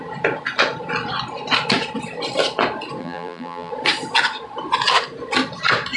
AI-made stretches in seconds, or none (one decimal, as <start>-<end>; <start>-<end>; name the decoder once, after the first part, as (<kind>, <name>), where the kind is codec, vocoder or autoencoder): 3.0-3.7 (vocoder, BigVGAN v2)